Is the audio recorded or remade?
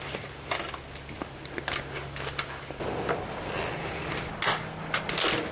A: recorded